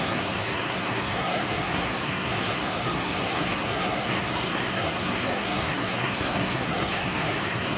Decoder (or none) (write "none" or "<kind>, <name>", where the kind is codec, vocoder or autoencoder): codec, SNAC